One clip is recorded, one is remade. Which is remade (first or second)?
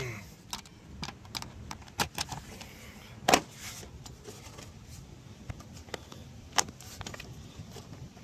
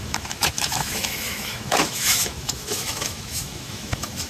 second